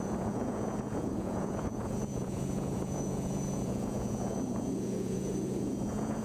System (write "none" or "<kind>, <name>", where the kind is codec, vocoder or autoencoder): vocoder, Vocos